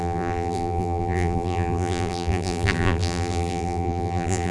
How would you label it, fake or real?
fake